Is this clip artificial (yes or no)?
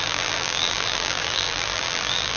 yes